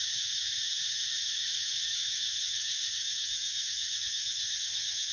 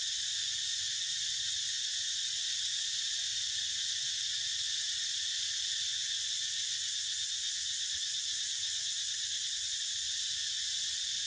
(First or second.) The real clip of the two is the second